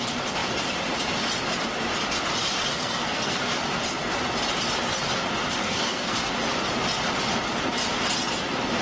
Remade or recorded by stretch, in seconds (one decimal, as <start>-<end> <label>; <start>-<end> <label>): 0.0-2.7 recorded; 2.7-3.4 remade; 3.4-5.6 recorded; 5.6-6.3 remade; 6.3-8.8 recorded